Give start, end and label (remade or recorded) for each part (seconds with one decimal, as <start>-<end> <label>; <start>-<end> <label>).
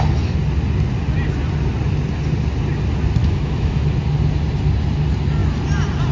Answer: 0.0-3.2 recorded; 3.2-3.8 remade; 3.8-6.1 recorded